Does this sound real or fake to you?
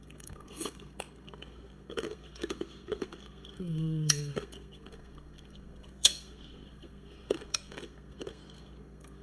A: fake